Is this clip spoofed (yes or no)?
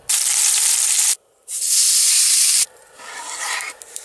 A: yes